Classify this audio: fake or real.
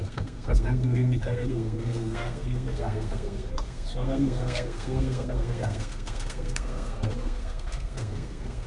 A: fake